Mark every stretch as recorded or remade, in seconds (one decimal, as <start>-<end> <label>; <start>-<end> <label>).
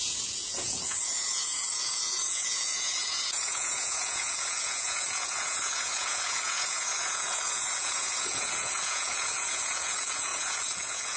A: 0.0-11.2 remade